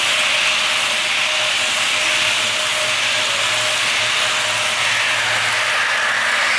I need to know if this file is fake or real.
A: real